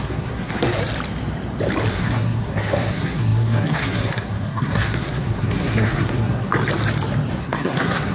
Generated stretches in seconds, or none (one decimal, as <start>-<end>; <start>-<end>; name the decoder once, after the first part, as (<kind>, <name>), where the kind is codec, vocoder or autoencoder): 0.0-0.8 (codec, SNAC); 1.9-6.5; 7.4-8.1